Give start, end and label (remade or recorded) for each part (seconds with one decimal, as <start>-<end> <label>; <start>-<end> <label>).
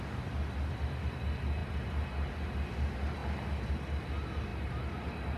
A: 0.0-5.4 recorded